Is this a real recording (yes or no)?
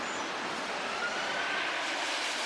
yes